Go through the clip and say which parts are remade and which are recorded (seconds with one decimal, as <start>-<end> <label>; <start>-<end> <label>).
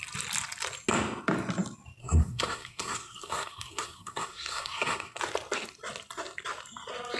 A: 0.0-2.0 recorded; 2.0-5.2 remade; 5.2-7.2 recorded